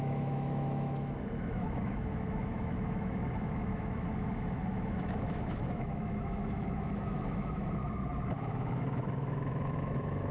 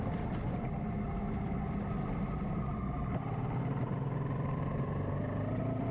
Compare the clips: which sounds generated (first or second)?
first